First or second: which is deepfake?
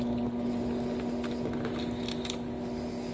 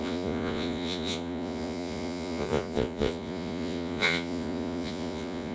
second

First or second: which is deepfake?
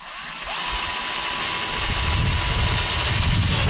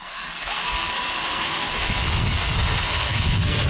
second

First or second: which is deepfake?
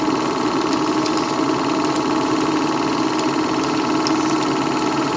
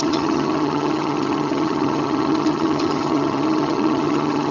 second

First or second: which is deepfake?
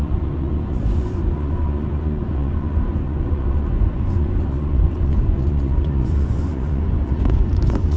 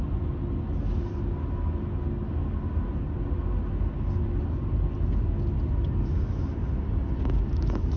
first